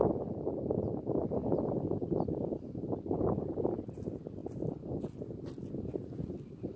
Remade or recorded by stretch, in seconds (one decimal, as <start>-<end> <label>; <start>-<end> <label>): 0.0-0.9 remade; 0.9-6.8 recorded